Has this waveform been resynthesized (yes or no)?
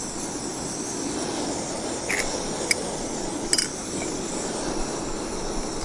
no